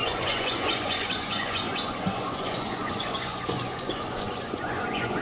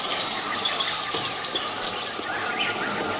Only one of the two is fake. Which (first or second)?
first